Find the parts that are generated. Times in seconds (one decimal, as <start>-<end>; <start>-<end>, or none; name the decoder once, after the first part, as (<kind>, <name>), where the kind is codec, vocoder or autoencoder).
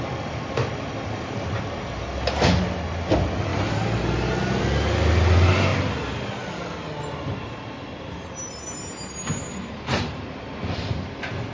none